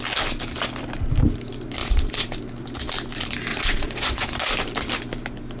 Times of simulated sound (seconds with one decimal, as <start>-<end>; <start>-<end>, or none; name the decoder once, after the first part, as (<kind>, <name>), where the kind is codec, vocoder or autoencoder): 1.8-2.3 (vocoder, Vocos); 3.5-4.3